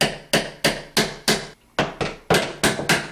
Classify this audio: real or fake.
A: real